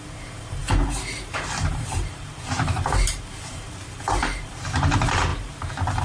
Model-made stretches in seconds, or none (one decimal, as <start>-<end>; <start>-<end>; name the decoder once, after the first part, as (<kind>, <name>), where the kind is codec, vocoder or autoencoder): 0.0-5.3 (vocoder, BigVGAN v2)